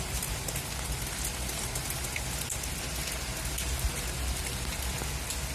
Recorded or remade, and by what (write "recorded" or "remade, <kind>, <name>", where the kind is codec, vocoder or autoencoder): recorded